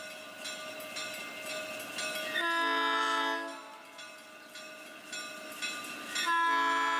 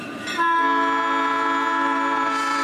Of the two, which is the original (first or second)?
first